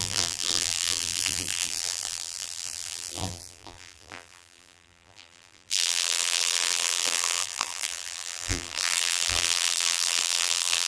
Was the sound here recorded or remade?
remade